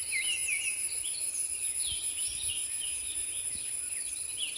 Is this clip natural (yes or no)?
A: yes